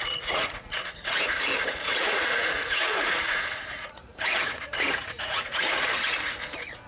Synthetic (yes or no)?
yes